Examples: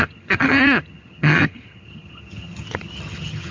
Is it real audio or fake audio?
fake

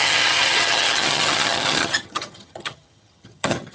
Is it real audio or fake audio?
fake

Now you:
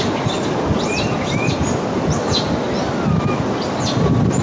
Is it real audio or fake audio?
real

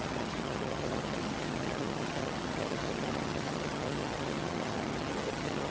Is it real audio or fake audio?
fake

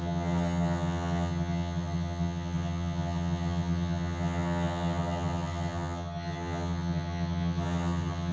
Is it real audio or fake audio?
fake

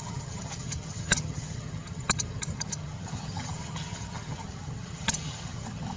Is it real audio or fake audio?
fake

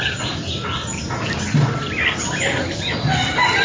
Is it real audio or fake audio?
real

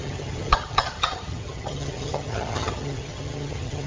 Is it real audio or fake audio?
fake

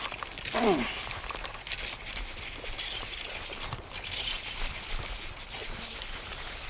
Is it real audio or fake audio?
real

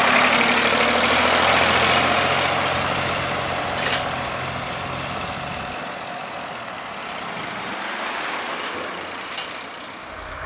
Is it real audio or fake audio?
real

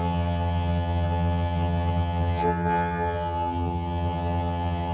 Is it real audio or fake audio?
fake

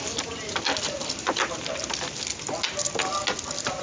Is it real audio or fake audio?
real